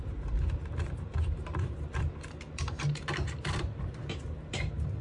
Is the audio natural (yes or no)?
no